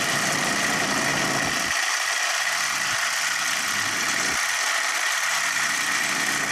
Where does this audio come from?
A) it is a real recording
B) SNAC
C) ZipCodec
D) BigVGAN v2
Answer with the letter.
A